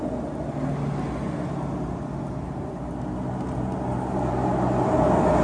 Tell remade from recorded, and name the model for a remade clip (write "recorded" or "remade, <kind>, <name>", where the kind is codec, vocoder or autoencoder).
recorded